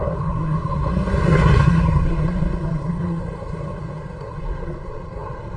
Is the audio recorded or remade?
remade